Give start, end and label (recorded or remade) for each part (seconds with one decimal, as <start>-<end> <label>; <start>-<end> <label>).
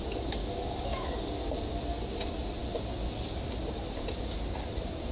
0.0-0.4 recorded; 0.4-1.1 remade; 1.1-5.1 recorded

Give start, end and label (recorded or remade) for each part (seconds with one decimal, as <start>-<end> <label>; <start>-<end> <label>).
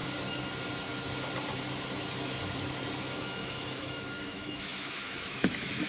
0.0-3.0 recorded; 3.0-5.9 remade